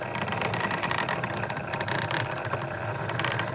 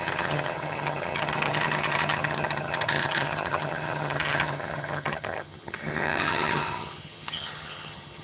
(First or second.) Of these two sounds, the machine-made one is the second